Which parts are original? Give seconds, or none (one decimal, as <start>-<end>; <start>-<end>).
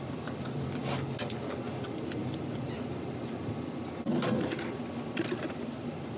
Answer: 0.8-1.5